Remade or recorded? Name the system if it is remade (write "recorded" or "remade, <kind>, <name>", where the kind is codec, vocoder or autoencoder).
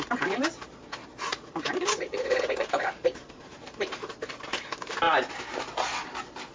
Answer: recorded